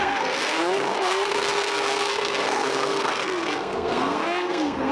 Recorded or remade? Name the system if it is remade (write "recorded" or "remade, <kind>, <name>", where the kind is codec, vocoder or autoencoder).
remade, codec, SNAC